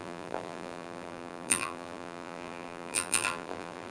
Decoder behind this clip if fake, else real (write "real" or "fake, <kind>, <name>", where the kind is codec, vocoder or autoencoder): fake, vocoder, BigVGAN v2